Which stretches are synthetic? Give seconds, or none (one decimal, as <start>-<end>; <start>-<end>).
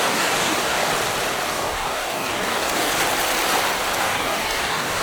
0.0-0.9; 1.5-2.9; 4.0-5.0